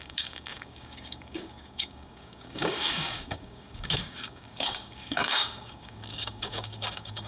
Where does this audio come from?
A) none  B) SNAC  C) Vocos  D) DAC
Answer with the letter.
D